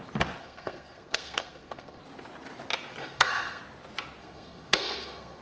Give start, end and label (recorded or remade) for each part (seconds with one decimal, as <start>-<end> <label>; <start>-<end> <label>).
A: 0.0-0.4 recorded; 0.4-2.0 remade; 2.0-3.0 recorded; 3.0-3.6 remade; 3.6-4.2 recorded; 4.2-5.4 remade